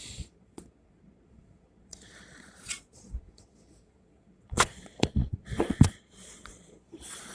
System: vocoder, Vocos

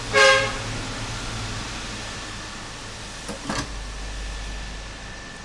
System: none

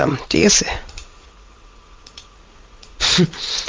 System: vocoder, Vocos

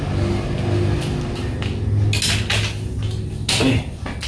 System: none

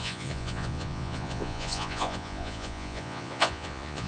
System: vocoder, Vocos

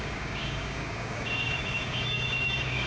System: codec, DAC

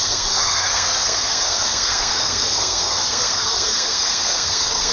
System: codec, SNAC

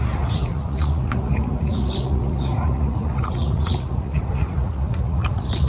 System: vocoder, Vocos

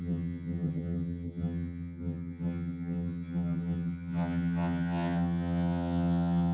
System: vocoder, HiFi-GAN